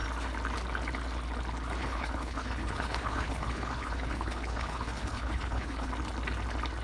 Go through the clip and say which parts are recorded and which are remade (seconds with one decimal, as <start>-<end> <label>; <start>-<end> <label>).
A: 0.0-1.8 recorded; 1.8-5.9 remade; 5.9-6.8 recorded